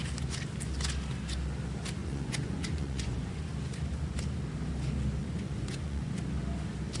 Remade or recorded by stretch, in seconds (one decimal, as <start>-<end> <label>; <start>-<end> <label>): 0.0-2.0 recorded; 2.0-3.4 remade; 3.4-5.2 recorded; 5.2-6.2 remade; 6.2-7.0 recorded

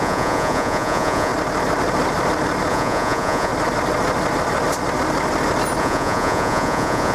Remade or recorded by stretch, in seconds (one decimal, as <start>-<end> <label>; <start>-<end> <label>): 0.0-1.3 remade; 1.3-2.7 recorded; 2.7-3.5 remade; 3.5-5.8 recorded; 5.8-7.1 remade

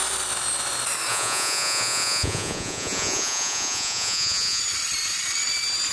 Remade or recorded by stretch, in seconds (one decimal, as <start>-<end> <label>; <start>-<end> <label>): 0.0-1.1 recorded; 1.1-4.6 remade; 4.6-5.9 recorded